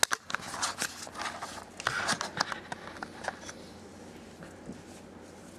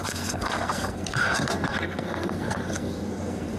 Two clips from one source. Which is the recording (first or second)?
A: first